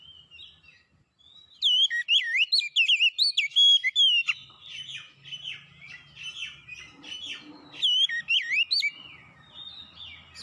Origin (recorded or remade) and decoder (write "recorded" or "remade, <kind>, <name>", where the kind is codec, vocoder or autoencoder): recorded